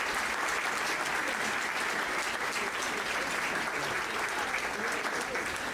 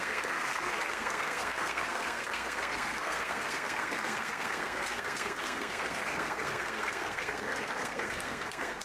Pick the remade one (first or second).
second